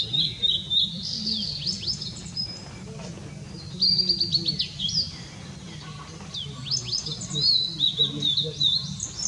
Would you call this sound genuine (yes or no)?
yes